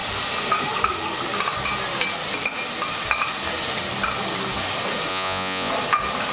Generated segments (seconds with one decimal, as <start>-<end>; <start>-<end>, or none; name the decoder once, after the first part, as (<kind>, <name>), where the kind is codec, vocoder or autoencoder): 5.1-5.7 (vocoder, Vocos)